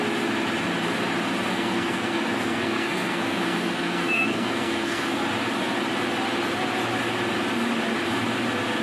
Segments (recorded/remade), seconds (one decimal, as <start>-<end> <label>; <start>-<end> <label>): 0.0-1.5 recorded; 1.5-5.2 remade; 5.2-8.8 recorded